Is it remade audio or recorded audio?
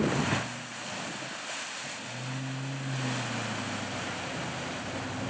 recorded